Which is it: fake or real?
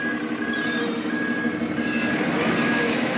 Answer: real